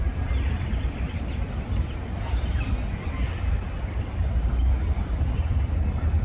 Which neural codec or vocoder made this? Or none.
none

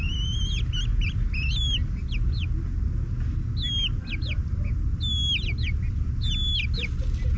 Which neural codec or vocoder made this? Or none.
none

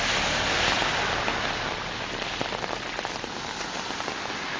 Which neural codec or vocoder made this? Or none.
none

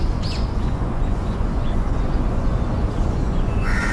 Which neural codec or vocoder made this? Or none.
vocoder, Vocos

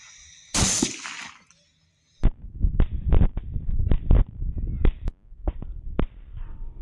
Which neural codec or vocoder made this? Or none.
vocoder, BigVGAN v2